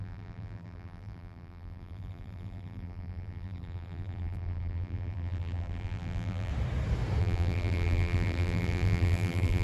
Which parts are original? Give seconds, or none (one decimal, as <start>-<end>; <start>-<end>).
6.5-7.2